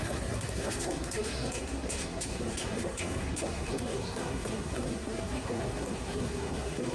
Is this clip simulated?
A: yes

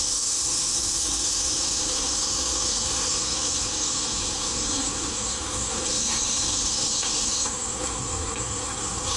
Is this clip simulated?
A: yes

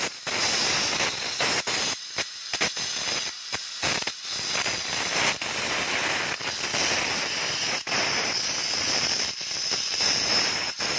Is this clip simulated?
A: no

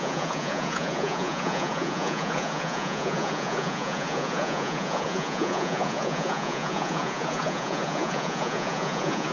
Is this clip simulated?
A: yes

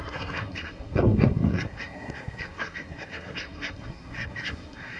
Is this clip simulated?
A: yes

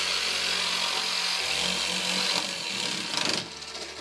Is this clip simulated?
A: no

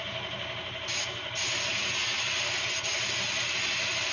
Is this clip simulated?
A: no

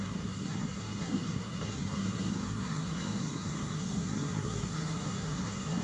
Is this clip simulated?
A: yes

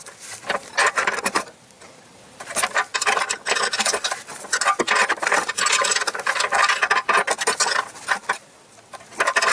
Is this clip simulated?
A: no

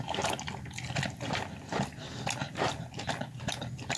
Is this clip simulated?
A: no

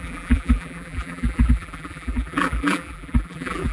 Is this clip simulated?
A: yes